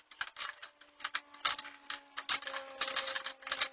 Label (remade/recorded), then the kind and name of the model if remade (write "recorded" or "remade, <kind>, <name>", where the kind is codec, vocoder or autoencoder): recorded